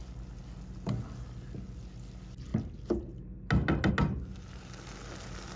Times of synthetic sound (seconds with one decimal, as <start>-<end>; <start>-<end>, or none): none